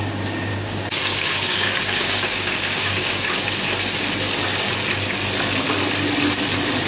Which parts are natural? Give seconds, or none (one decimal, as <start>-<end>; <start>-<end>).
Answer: 0.0-0.5; 3.3-6.9